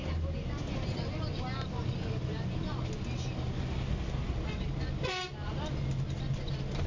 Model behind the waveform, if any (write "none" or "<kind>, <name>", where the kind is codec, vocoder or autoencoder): none